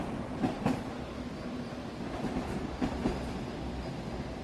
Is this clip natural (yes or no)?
yes